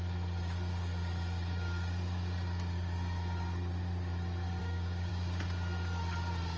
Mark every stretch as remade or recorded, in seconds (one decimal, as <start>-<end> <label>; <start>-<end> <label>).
0.0-4.6 recorded; 4.6-5.1 remade; 5.1-6.6 recorded